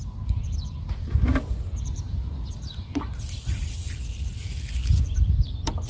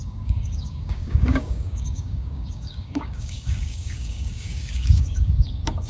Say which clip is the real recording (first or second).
first